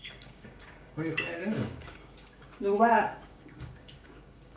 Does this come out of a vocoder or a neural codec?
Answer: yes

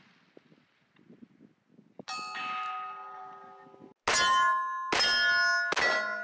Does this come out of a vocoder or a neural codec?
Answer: no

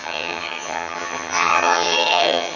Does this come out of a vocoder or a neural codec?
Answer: yes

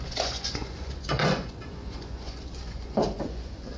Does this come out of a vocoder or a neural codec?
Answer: yes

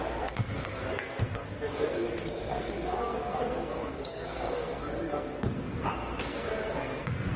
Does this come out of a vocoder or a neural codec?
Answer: yes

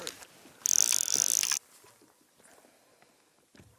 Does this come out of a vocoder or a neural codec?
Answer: no